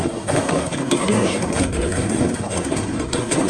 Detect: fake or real fake